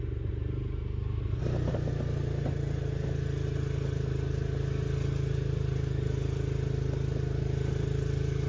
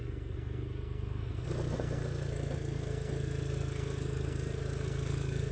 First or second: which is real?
first